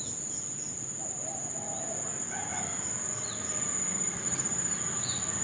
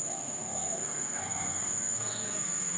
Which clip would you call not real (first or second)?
second